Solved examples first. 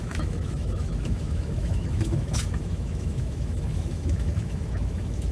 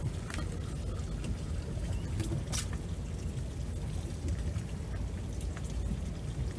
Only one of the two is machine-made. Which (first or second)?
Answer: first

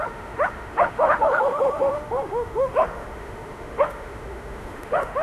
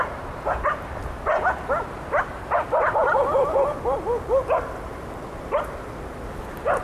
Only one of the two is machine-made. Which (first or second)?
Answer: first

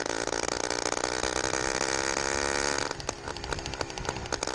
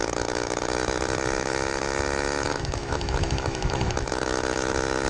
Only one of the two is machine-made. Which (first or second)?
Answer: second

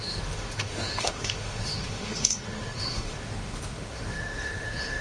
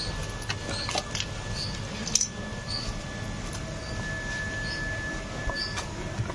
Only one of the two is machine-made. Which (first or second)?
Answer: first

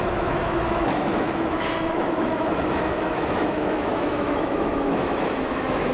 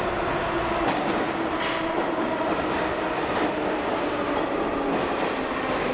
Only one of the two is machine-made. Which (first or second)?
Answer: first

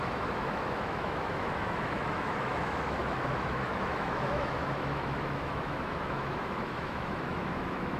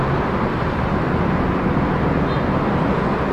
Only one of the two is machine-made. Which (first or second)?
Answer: first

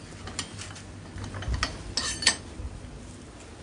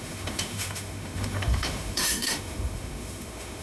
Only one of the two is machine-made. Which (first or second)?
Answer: second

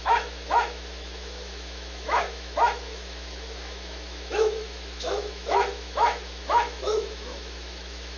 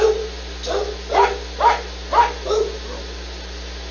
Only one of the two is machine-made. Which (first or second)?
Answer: first